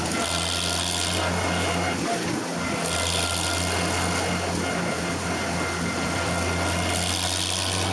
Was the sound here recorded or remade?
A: recorded